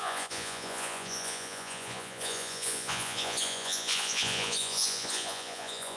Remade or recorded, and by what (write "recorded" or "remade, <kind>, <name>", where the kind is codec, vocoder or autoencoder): remade, vocoder, Vocos